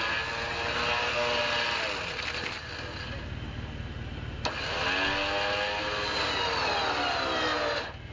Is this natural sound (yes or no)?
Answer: yes